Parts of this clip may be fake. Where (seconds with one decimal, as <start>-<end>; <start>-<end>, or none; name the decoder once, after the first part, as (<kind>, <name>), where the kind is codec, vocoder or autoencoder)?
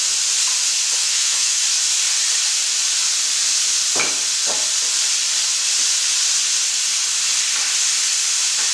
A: 1.0-1.6 (autoencoder, DAC-VAE)